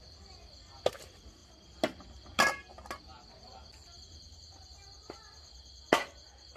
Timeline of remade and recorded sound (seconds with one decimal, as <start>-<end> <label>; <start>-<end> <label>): 0.0-6.6 recorded